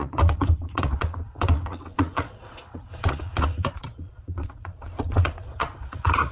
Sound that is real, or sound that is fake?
fake